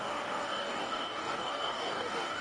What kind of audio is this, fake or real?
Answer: fake